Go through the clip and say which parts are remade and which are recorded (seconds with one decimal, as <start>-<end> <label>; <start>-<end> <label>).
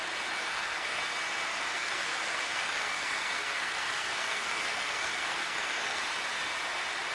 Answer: 0.0-0.4 recorded; 0.4-1.0 remade; 1.0-1.7 recorded; 1.7-6.0 remade; 6.0-7.1 recorded